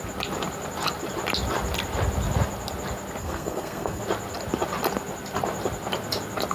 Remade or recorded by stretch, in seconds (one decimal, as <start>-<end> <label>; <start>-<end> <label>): 0.0-3.2 recorded; 3.2-4.0 remade; 4.0-6.5 recorded